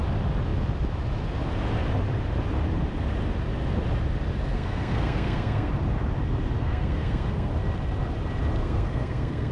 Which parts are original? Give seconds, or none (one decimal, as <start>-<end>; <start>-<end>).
0.0-4.5; 5.7-6.6; 7.5-8.6